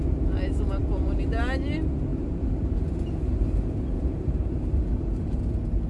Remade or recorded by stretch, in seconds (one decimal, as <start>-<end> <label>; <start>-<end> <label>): 0.0-2.1 recorded; 2.1-5.4 remade; 5.4-5.9 recorded